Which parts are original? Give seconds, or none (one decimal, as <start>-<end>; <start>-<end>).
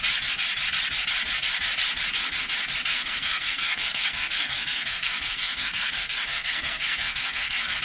0.0-2.9